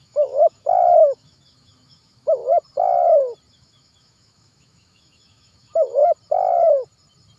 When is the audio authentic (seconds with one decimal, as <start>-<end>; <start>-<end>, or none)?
2.4-3.5; 6.0-7.4